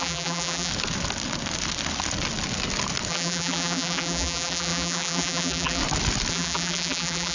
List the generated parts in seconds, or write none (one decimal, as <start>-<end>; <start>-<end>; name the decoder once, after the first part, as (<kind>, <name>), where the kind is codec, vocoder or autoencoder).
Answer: 0.0-0.7 (vocoder, BigVGAN v2); 3.1-5.8; 6.3-7.3